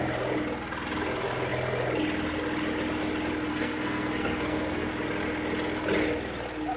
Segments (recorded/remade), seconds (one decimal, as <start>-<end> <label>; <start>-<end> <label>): 0.0-3.5 recorded; 3.5-4.9 remade; 4.9-6.8 recorded